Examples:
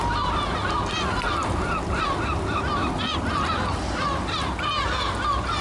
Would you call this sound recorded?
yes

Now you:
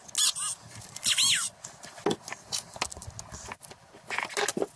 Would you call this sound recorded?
yes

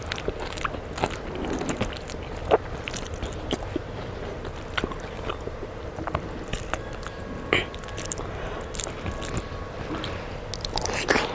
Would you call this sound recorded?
yes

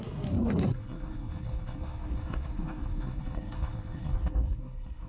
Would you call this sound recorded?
no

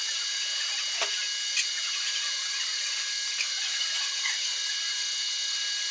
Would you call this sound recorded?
yes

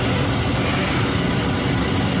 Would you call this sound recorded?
yes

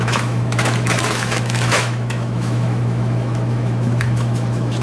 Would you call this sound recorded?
no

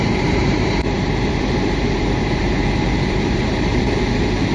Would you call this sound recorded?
no